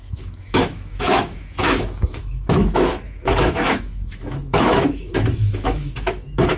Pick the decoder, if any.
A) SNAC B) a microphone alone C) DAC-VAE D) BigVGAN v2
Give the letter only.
C